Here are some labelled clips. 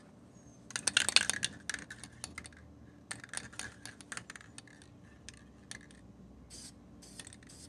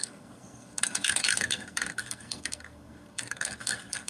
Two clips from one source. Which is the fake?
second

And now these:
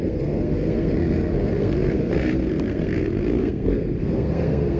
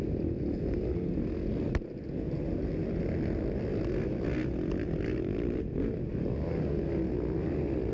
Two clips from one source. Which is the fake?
first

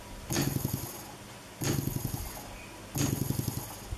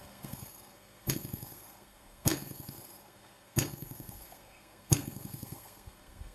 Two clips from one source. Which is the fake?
second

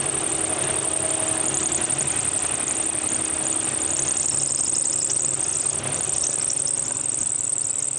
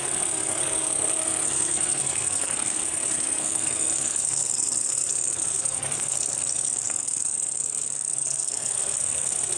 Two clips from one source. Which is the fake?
second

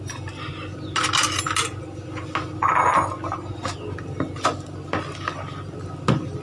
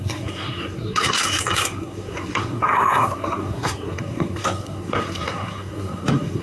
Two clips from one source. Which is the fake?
second